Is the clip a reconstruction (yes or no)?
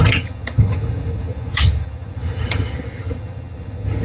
yes